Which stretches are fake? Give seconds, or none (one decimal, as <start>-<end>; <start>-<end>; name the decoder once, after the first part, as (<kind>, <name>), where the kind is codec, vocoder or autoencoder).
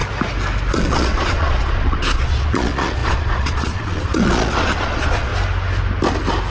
0.7-5.3 (vocoder, Vocos)